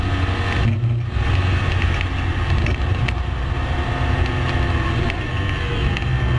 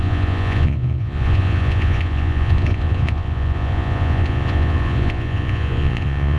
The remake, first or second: second